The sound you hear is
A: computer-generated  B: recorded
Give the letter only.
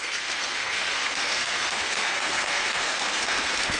A